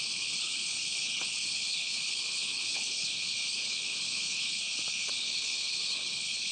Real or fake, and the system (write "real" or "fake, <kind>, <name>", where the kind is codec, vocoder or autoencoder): fake, codec, HILCodec